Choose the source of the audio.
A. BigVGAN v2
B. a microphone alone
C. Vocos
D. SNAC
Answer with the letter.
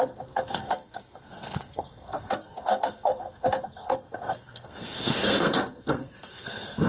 D